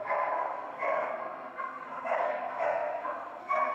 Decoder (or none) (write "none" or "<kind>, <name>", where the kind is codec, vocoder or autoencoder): codec, SNAC